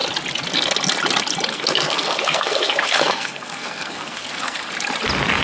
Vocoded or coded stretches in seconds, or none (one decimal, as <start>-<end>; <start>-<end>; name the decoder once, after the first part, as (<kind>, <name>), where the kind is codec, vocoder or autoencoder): 1.5-4.7 (codec, SNAC)

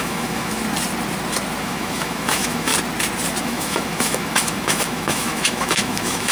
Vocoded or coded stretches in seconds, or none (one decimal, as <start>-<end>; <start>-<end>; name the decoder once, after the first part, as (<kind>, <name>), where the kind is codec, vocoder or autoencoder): 0.0-0.6 (autoencoder, DAC-VAE); 1.6-2.7; 3.4-6.3